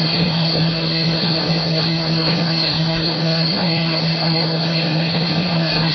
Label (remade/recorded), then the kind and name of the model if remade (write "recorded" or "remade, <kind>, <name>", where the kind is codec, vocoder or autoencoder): remade, codec, SNAC